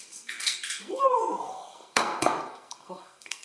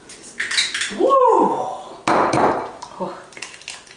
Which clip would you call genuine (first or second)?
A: second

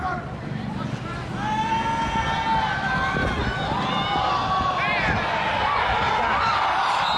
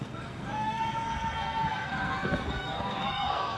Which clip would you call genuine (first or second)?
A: first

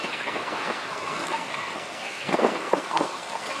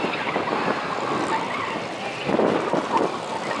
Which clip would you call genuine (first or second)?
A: second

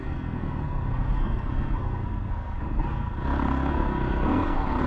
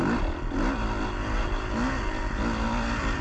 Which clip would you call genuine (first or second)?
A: second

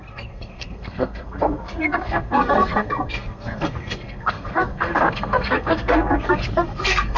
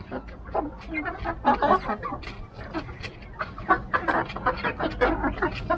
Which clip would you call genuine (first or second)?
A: second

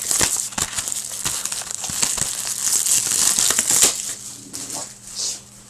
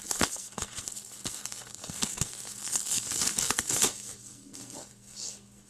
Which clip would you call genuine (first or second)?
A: first